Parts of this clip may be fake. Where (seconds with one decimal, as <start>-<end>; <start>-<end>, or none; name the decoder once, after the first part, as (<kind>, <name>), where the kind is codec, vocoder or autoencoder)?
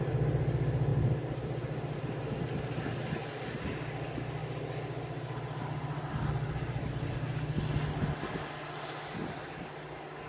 none